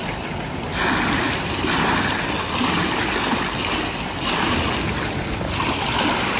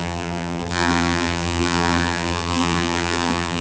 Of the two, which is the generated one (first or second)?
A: second